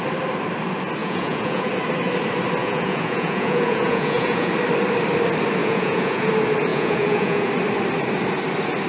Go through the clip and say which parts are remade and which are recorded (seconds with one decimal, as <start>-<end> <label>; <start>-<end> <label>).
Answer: 0.0-1.0 recorded; 1.0-1.7 remade; 1.7-2.6 recorded; 2.6-4.5 remade; 4.5-5.6 recorded; 5.6-6.3 remade; 6.3-6.7 recorded; 6.7-7.5 remade; 7.5-8.9 recorded